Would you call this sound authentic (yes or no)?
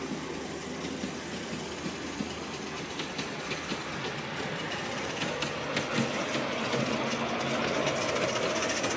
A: yes